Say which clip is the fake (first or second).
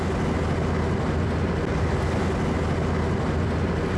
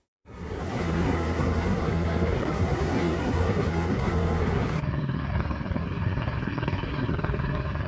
second